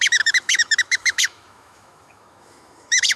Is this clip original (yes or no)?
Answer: no